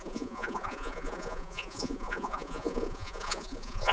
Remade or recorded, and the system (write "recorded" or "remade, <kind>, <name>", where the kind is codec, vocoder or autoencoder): remade, vocoder, Vocos